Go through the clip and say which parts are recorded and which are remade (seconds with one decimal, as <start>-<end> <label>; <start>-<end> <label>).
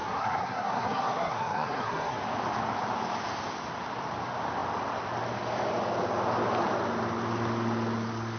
0.0-2.2 remade; 2.2-8.4 recorded